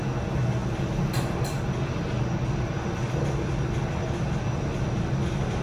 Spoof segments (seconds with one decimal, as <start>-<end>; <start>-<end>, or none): none